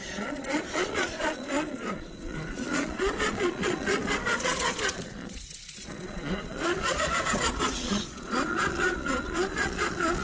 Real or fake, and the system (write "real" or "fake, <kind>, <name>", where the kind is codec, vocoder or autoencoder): fake, vocoder, Vocos